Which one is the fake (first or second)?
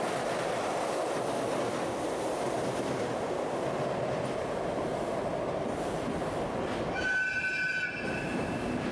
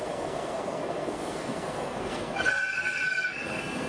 second